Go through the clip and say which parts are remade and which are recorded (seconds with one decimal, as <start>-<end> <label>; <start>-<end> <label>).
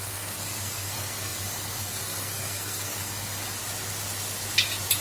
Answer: 0.0-3.6 remade; 3.6-5.0 recorded